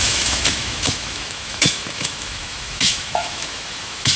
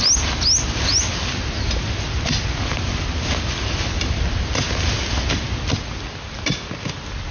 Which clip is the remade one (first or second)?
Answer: first